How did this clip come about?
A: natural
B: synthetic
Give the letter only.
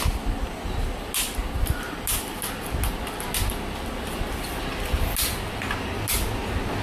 A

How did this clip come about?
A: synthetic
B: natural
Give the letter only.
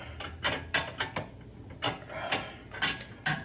B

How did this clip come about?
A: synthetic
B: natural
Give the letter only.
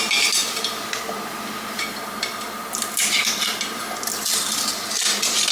B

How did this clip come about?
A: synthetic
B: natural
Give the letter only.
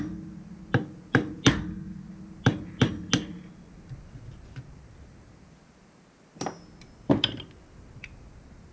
B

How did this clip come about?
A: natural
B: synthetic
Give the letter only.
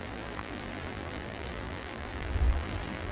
B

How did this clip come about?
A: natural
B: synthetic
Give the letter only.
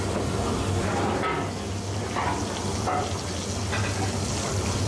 A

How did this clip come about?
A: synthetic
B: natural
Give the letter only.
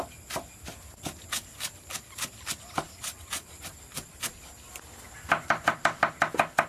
B